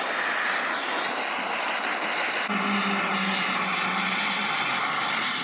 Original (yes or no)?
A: yes